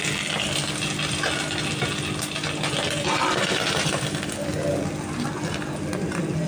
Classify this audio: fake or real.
real